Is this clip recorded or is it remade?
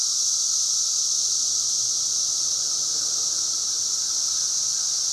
remade